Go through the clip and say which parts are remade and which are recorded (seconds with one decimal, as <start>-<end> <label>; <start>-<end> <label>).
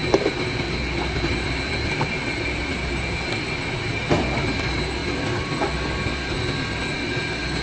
0.0-7.6 recorded